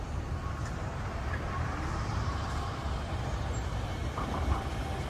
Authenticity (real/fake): fake